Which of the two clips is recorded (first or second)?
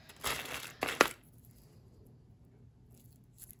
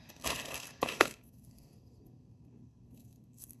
first